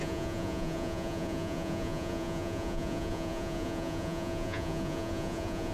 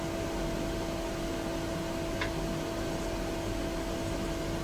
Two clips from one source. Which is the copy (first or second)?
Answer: first